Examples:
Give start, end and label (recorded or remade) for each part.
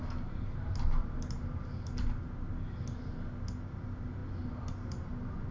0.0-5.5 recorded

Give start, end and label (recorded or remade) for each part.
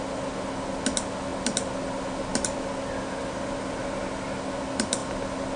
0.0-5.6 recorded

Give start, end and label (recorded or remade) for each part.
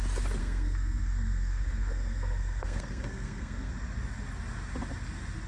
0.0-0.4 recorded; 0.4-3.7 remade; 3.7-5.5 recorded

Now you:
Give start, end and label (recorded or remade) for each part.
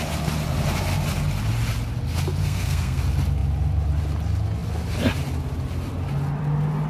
0.0-2.4 recorded; 2.4-3.0 remade; 3.0-6.9 recorded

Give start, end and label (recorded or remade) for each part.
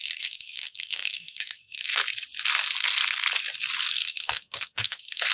0.0-2.0 remade; 2.0-3.9 recorded; 3.9-5.3 remade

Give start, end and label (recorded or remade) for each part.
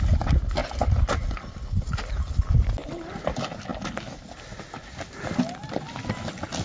0.0-6.6 recorded